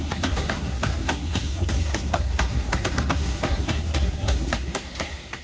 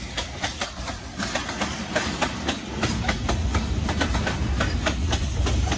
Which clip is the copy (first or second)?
first